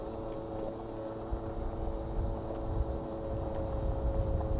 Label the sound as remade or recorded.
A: recorded